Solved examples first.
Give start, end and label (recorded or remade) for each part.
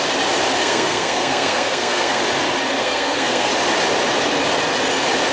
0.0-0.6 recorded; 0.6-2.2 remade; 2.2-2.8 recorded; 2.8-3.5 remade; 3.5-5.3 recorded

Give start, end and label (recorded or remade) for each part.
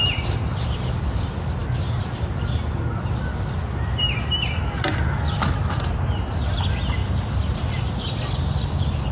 0.0-9.1 recorded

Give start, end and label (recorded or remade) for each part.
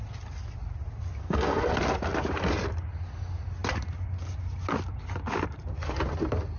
0.0-1.2 recorded; 1.2-1.7 remade; 1.7-6.6 recorded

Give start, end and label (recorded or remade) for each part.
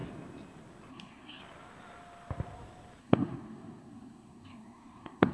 0.0-0.9 recorded; 0.9-1.4 remade; 1.4-3.0 recorded; 3.0-5.3 remade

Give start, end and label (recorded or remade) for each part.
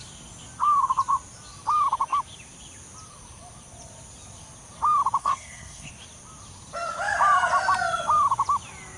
0.0-5.2 recorded; 5.2-5.9 remade; 5.9-9.0 recorded